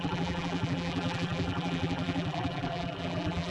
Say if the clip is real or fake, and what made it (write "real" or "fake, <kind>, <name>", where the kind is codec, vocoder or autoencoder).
fake, vocoder, BigVGAN v2